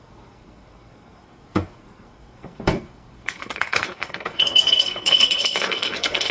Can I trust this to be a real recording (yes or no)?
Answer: no